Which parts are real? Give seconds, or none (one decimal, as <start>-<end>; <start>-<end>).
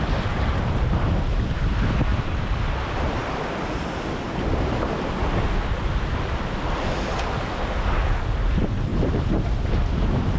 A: 0.0-2.1; 2.7-8.9; 9.4-10.4